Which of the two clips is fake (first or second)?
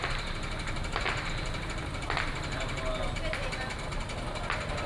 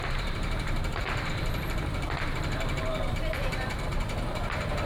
second